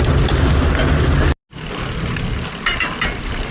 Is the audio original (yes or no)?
yes